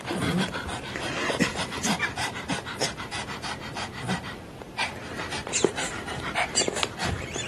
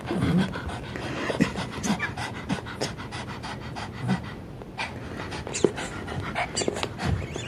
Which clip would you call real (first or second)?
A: second